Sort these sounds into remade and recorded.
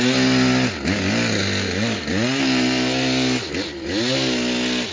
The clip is recorded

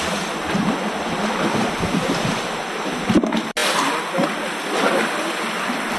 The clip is recorded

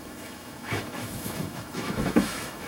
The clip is remade